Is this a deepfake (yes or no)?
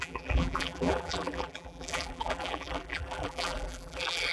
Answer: yes